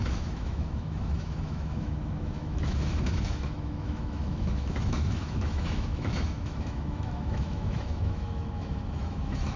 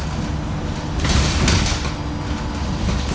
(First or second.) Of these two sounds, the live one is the second